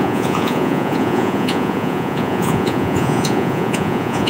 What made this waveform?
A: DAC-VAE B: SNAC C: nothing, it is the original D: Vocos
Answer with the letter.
D